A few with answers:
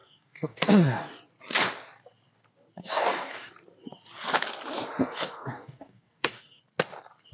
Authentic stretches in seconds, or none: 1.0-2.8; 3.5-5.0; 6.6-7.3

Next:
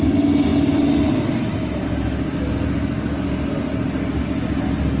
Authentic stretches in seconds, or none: 0.0-5.0

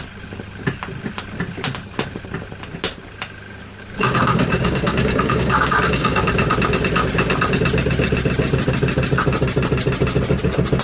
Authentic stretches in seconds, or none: 0.0-4.0; 6.3-10.8

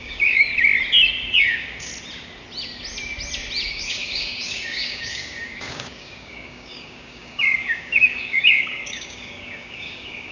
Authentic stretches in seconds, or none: 0.5-1.4; 1.9-3.7

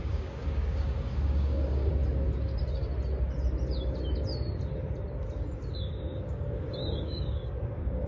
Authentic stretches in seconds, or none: 1.9-5.9